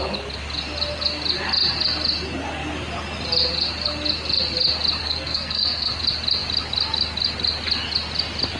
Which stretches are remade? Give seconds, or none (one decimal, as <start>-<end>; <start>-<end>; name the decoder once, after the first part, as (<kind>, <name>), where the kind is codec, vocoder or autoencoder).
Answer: 5.0-5.9 (codec, SNAC)